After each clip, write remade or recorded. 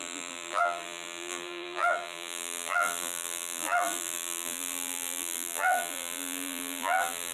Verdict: remade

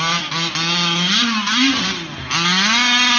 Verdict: recorded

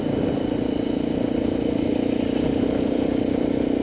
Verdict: recorded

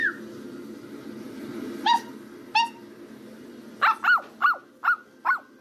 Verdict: recorded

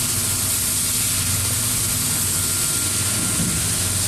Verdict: recorded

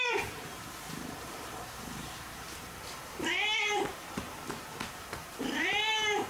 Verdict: remade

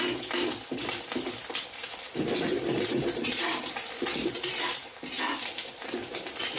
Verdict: remade